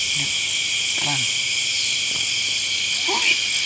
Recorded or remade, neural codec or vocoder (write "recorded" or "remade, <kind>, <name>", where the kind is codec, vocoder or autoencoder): recorded